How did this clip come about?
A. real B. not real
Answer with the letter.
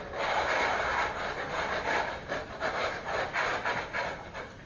A